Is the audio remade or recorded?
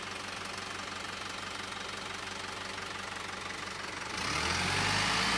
recorded